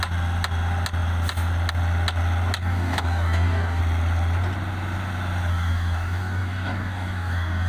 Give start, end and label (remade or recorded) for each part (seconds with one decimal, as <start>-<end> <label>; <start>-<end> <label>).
0.0-2.6 recorded; 2.6-3.8 remade; 3.8-5.5 recorded; 5.5-7.7 remade